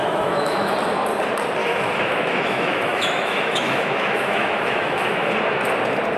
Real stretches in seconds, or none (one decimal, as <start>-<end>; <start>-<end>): 0.7-1.6; 5.3-6.2